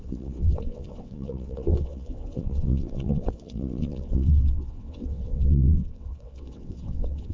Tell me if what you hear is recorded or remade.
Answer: remade